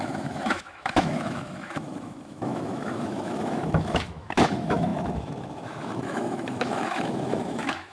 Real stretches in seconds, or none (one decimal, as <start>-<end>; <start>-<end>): none